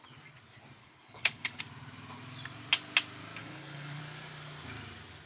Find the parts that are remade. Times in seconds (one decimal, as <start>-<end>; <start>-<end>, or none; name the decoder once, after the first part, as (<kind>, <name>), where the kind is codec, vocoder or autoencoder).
0.8-1.6 (codec, HILCodec); 3.4-4.0